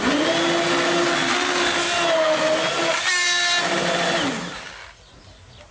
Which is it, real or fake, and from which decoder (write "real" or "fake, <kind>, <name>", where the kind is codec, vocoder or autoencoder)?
real